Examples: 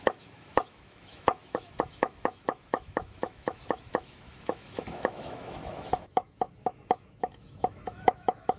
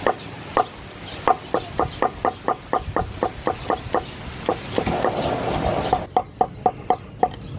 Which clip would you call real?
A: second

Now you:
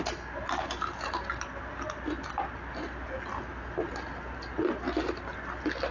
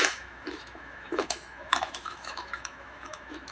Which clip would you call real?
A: first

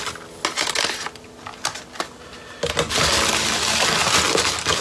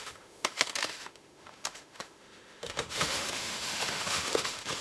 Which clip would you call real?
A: first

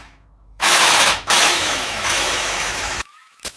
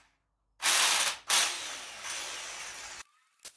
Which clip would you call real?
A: second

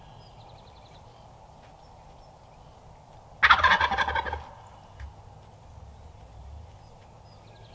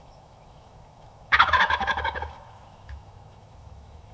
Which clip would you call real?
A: first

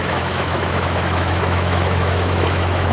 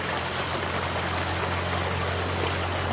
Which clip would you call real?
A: second